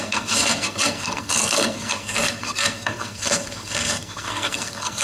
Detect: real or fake fake